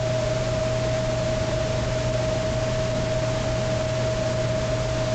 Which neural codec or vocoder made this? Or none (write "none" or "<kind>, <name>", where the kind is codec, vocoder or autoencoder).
none